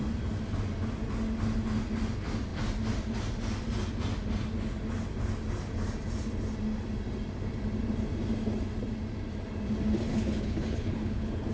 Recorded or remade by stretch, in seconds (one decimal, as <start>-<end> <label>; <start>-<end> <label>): 0.0-10.1 recorded; 10.1-11.5 remade